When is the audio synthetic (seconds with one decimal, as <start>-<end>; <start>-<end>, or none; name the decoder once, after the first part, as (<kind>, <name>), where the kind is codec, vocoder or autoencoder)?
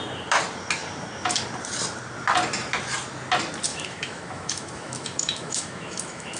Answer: 3.7-6.4 (autoencoder, DAC-VAE)